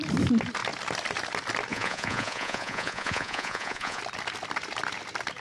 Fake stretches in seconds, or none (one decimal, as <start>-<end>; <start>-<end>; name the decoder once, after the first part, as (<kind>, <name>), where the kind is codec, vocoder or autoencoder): 1.7-4.0 (vocoder, Vocos)